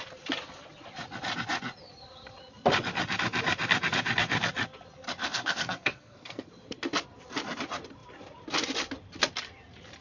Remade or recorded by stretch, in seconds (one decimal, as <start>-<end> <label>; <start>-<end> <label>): 0.0-5.2 recorded; 5.2-6.5 remade; 6.5-10.0 recorded